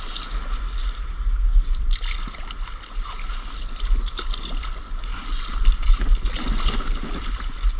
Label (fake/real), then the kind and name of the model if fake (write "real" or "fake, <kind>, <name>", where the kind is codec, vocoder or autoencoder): real